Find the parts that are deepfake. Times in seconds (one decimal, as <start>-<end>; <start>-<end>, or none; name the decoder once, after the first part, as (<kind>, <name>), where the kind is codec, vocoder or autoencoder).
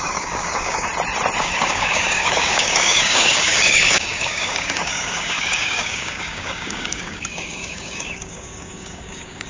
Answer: 0.0-0.9 (codec, DAC); 1.4-9.5